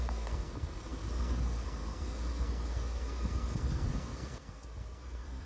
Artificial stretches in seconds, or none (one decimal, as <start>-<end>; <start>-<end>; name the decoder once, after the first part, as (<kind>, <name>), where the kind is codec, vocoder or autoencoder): 0.0-5.5 (codec, SNAC)